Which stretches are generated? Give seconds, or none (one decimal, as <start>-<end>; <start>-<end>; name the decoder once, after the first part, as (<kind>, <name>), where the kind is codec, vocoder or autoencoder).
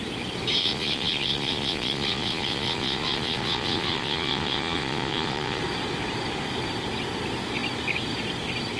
0.6-5.6 (vocoder, Vocos)